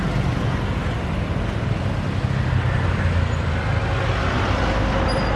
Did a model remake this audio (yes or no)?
no